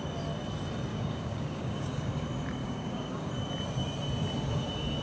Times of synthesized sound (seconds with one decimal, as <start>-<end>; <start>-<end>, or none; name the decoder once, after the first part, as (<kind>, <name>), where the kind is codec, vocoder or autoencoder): 0.9-2.2 (codec, DAC); 2.6-3.3